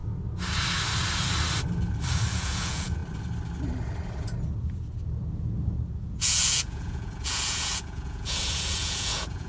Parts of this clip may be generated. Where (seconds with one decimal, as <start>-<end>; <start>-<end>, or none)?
2.3-3.0; 6.0-9.5